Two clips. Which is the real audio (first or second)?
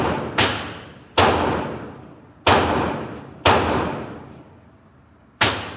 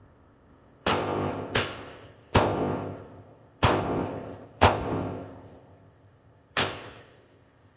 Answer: first